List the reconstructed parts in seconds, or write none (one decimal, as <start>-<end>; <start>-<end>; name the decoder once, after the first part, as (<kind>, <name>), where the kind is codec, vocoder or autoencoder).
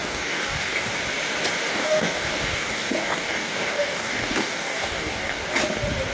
0.0-0.9 (codec, DAC); 1.7-5.4